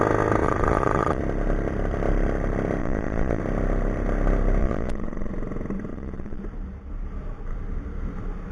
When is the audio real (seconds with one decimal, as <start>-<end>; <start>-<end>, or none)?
0.0-0.4; 1.2-2.8; 3.4-4.6; 5.3-5.9; 6.4-8.5